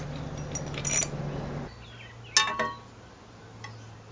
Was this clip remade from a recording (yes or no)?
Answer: no